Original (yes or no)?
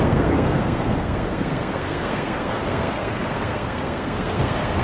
no